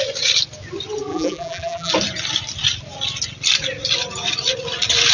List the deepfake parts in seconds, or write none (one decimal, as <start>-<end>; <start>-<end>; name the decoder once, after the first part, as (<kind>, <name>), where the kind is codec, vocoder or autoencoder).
1.1-1.9 (vocoder, BigVGAN v2)